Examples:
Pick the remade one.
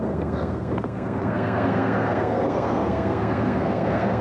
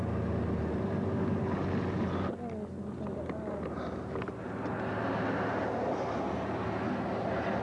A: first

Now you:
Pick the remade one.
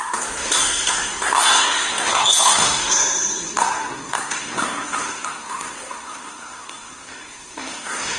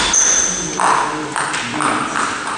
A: first